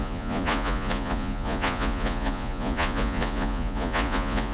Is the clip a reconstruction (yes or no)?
yes